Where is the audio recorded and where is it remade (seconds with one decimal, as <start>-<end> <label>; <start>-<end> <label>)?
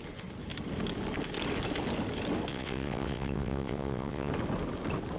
0.0-2.5 recorded; 2.5-4.3 remade; 4.3-5.2 recorded